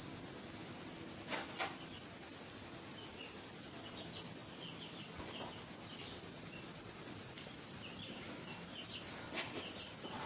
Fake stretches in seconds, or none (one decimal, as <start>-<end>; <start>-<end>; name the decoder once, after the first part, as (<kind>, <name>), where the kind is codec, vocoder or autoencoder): none